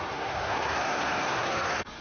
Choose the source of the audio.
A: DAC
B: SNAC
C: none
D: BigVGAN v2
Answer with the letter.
B